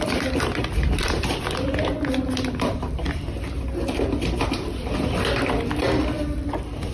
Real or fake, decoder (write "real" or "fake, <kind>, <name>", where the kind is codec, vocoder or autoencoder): real